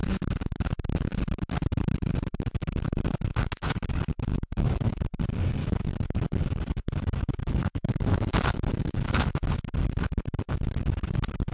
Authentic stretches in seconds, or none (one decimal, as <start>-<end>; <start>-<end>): 0.0-4.3; 5.0-5.6; 6.2-7.4; 9.3-11.5